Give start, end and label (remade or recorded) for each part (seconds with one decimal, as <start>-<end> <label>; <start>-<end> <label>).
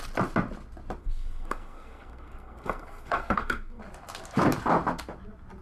0.0-1.0 recorded; 1.0-3.8 remade; 3.8-5.6 recorded